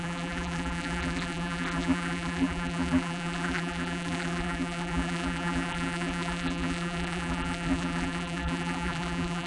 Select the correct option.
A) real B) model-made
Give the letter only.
B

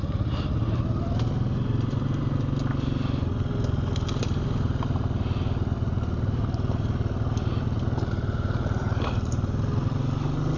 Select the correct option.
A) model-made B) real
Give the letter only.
B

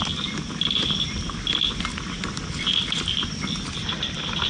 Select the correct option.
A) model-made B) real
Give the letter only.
B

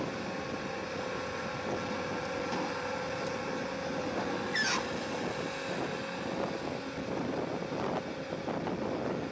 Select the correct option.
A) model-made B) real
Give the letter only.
B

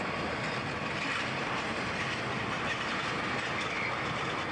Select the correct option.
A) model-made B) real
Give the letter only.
B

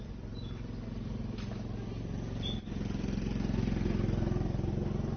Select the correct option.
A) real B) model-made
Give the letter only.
A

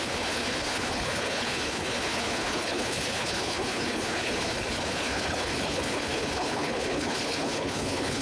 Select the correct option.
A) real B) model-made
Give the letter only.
B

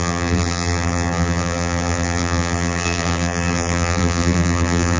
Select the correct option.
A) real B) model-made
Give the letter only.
B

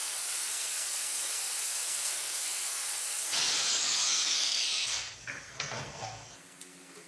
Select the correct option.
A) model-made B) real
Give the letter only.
A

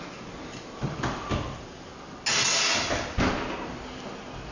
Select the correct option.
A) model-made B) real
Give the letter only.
B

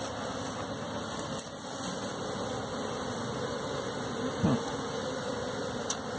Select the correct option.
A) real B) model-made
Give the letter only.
A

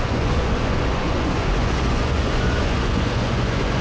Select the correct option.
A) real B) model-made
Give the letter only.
B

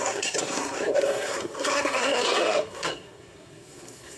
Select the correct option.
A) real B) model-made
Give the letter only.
B